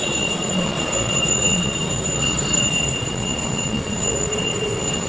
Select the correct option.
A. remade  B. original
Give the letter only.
A